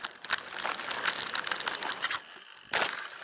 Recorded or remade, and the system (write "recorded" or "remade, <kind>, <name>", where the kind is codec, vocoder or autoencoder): recorded